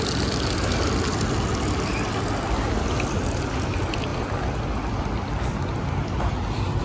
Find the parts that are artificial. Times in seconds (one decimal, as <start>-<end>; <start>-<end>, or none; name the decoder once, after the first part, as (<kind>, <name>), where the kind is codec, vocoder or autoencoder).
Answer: none